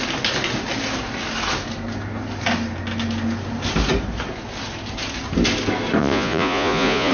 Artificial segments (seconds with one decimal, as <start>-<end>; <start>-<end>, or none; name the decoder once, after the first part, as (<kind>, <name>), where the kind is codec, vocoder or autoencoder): 6.0-7.1 (vocoder, Vocos)